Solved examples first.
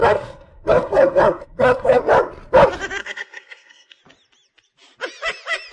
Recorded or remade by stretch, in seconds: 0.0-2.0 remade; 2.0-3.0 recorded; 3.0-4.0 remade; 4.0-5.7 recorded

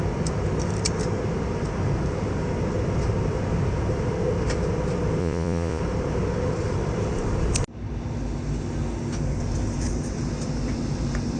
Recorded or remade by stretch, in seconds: 0.0-5.2 recorded; 5.2-5.8 remade; 5.8-11.4 recorded

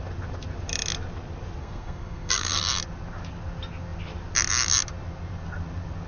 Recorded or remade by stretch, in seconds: 0.0-1.6 recorded; 1.6-2.6 remade; 2.6-6.1 recorded

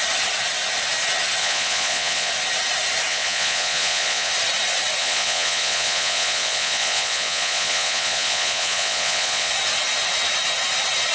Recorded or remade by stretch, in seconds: 0.0-1.4 recorded; 1.4-2.3 remade; 2.3-3.1 recorded; 3.1-4.3 remade; 4.3-5.0 recorded; 5.0-9.5 remade; 9.5-11.1 recorded